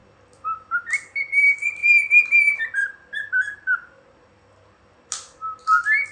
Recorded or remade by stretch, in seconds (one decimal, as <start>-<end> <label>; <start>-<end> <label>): 0.0-6.1 recorded